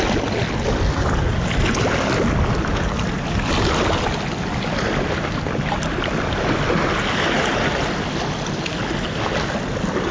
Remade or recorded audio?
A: recorded